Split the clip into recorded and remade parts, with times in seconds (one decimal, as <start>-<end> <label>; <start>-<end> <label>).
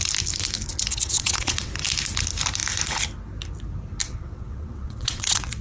0.0-0.9 recorded; 0.9-1.7 remade; 1.7-4.0 recorded; 4.0-5.6 remade